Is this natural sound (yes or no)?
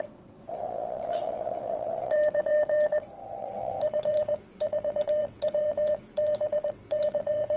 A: no